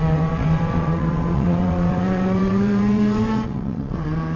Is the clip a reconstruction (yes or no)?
yes